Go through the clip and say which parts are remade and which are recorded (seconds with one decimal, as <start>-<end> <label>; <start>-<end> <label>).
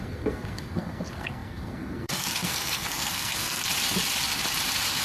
0.0-3.6 remade; 3.6-5.0 recorded